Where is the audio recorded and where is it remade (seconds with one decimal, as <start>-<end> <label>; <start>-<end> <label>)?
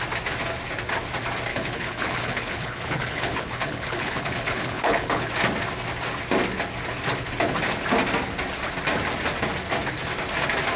0.0-1.5 recorded; 1.5-5.3 remade; 5.3-10.8 recorded